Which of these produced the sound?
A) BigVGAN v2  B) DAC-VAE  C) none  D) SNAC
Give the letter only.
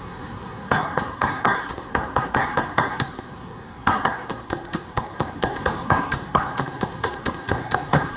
D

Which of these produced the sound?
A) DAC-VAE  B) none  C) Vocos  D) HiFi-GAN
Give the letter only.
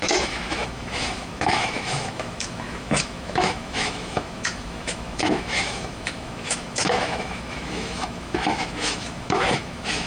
A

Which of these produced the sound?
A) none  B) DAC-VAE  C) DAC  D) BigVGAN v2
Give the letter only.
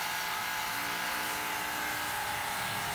A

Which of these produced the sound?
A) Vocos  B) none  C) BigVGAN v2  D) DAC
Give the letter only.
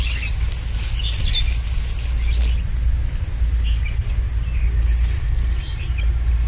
B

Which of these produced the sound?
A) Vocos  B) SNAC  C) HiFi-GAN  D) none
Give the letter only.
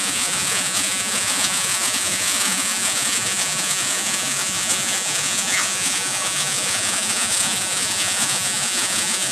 A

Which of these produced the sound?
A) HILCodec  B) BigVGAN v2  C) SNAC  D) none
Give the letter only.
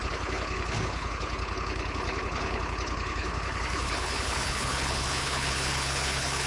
A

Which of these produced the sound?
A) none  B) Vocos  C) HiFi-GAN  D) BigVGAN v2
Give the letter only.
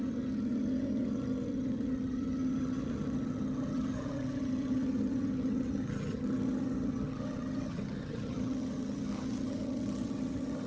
C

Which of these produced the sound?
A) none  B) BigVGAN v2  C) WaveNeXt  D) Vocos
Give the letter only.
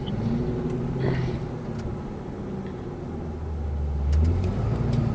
A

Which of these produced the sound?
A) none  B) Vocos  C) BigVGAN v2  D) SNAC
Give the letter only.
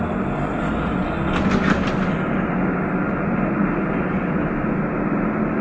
A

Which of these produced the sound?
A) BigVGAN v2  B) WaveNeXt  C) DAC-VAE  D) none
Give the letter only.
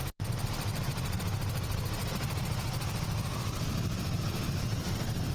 A